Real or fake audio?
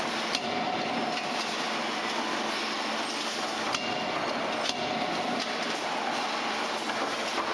real